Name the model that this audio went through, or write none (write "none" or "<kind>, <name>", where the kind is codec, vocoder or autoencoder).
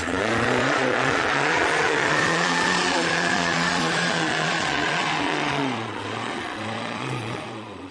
vocoder, Vocos